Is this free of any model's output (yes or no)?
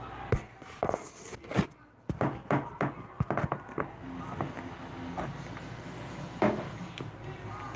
yes